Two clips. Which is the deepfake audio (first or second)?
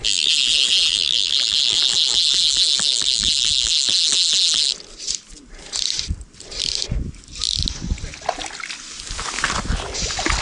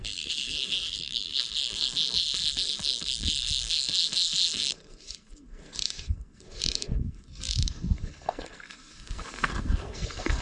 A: second